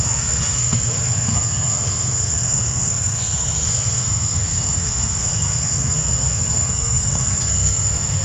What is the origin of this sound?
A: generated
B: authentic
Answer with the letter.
A